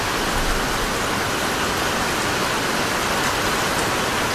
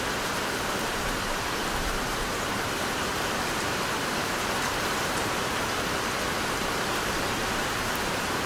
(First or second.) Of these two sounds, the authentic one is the first